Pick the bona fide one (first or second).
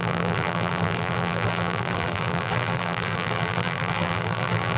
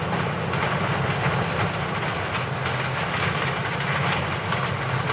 second